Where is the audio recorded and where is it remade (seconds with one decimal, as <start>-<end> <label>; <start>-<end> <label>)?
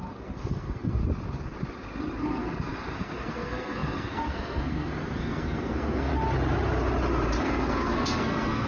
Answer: 0.0-1.0 remade; 1.0-2.2 recorded; 2.2-6.1 remade; 6.1-7.4 recorded; 7.4-8.7 remade